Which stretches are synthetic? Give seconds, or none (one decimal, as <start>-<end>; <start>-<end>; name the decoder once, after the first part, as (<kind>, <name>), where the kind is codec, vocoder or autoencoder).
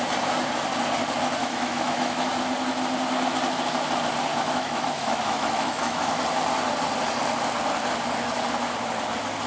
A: 1.4-2.3 (autoencoder, DAC-VAE); 4.3-6.2